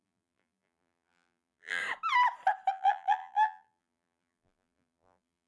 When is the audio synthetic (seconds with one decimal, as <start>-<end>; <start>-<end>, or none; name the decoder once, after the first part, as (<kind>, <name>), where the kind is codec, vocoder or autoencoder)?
0.0-1.8 (vocoder, BigVGAN v2); 2.7-5.5